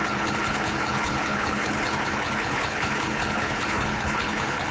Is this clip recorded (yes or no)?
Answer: no